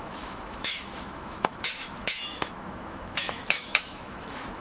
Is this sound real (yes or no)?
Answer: no